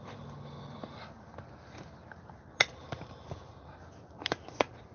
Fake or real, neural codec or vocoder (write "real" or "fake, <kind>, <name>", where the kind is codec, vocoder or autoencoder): real